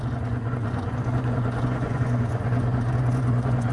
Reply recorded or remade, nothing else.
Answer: remade